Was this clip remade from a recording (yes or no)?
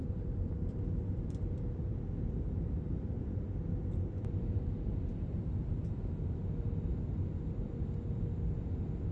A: yes